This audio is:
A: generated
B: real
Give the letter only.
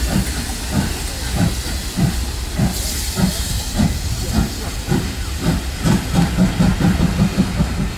B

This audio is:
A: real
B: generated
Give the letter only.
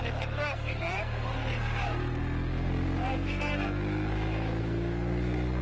B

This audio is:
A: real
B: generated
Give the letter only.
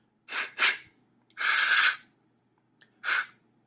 A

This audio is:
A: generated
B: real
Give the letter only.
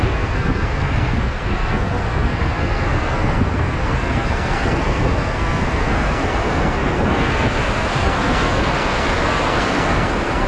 A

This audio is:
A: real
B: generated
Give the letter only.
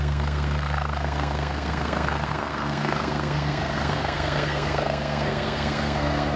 B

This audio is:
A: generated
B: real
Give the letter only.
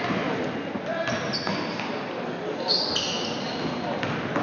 B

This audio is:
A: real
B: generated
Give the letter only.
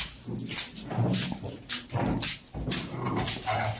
A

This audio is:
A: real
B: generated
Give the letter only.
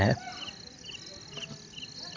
A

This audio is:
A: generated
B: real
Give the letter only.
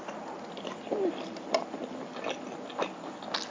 B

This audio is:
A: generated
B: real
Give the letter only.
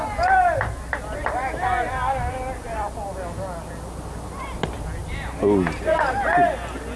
B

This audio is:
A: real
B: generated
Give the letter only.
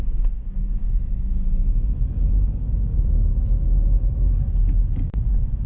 A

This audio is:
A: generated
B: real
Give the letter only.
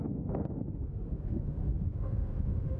A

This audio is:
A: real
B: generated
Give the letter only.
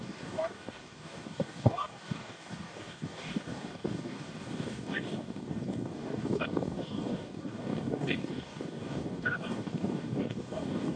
B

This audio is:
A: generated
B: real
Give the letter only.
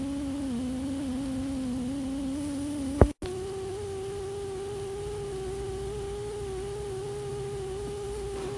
B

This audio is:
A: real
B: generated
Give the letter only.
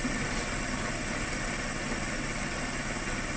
A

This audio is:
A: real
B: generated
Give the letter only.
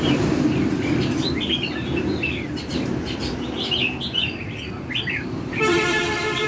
B